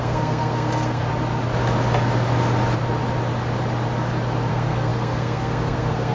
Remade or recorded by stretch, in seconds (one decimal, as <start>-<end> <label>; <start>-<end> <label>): 0.0-1.1 remade; 1.1-4.5 recorded; 4.5-6.1 remade